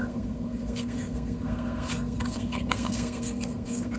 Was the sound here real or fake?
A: fake